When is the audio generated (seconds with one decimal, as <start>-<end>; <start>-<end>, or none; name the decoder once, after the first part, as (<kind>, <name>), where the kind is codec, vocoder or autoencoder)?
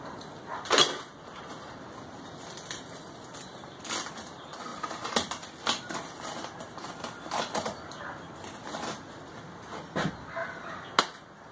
none